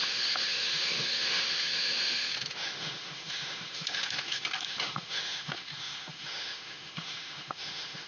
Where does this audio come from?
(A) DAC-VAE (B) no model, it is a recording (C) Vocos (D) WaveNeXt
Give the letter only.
A